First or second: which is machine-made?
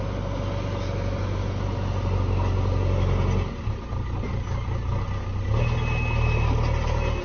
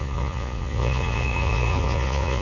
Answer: second